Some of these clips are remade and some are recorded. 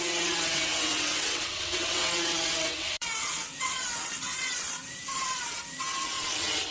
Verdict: remade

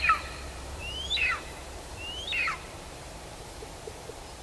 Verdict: remade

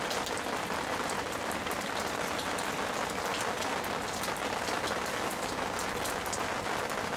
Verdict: recorded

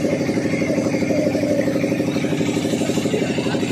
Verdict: remade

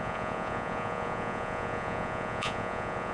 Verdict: remade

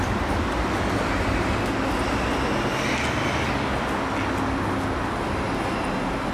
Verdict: recorded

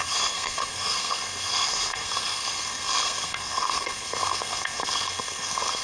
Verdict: remade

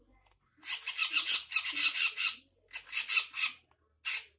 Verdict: recorded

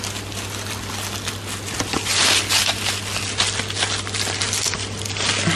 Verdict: recorded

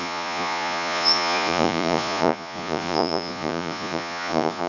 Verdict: remade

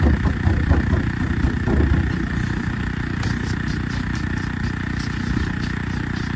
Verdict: recorded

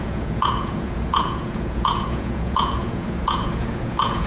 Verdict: remade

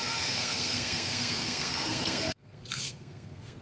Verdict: remade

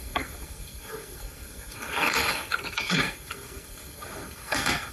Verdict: remade